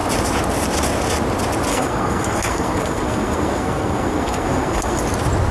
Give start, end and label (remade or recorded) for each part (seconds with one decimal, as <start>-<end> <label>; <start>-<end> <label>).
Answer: 0.0-1.7 recorded; 1.7-5.0 remade; 5.0-5.5 recorded